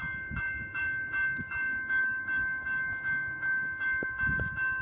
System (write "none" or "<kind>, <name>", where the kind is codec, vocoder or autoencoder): autoencoder, DAC-VAE